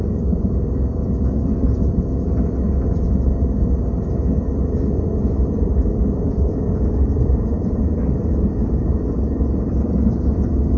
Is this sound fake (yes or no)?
yes